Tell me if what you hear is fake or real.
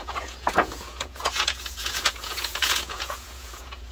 fake